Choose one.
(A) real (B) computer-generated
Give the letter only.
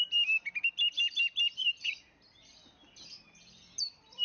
A